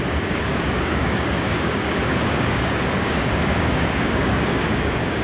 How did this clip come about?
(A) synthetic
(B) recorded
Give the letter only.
A